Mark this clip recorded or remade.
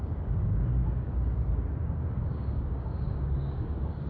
remade